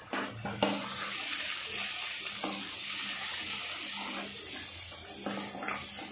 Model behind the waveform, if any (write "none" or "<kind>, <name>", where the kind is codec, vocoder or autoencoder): none